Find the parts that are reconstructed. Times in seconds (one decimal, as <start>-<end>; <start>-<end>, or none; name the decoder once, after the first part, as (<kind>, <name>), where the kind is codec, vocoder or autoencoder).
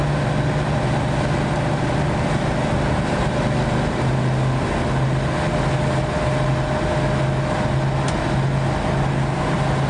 none